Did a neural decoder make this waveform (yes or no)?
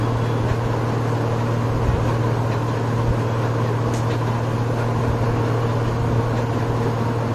no